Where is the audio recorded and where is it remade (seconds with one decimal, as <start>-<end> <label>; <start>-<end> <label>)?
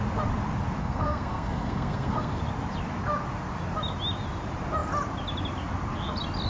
0.0-0.8 recorded; 0.8-2.4 remade; 2.4-6.5 recorded